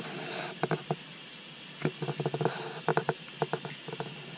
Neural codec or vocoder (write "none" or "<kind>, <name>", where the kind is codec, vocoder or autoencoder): none